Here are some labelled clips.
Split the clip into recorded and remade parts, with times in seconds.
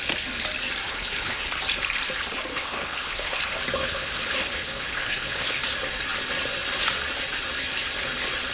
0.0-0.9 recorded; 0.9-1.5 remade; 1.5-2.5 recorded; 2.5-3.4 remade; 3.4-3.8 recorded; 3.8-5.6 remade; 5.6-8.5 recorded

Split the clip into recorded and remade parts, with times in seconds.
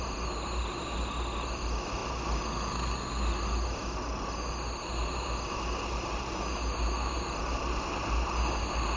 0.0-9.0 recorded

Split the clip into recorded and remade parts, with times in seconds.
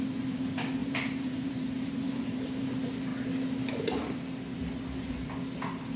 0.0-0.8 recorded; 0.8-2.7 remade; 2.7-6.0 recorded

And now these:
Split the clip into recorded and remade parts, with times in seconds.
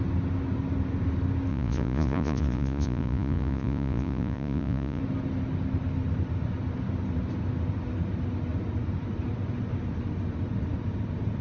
0.0-1.5 recorded; 1.5-5.0 remade; 5.0-11.4 recorded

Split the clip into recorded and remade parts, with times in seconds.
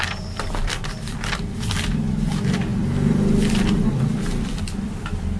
0.0-5.4 remade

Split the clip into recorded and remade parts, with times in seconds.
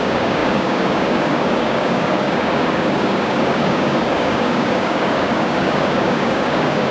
0.0-6.9 remade